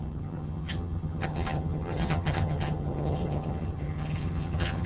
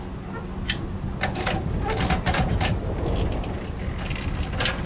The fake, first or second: first